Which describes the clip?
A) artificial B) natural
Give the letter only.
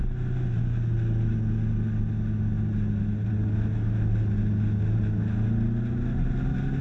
B